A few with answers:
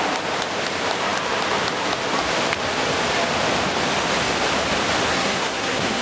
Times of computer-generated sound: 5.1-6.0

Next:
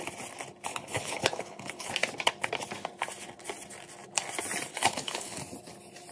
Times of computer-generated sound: 0.7-1.9; 4.7-5.4

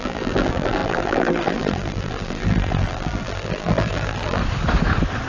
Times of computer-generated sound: 0.0-4.4

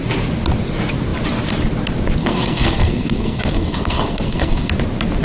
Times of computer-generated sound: 2.2-4.7

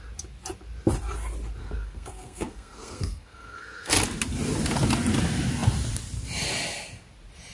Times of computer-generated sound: 1.6-3.9